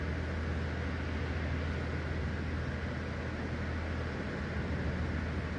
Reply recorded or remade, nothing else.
recorded